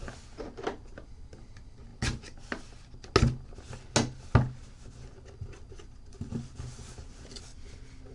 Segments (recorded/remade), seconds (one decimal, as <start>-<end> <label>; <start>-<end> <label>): 0.0-8.1 recorded